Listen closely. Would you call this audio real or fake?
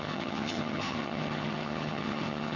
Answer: fake